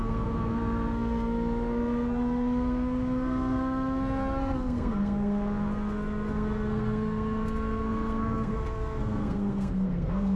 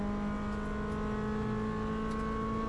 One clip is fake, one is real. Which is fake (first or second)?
first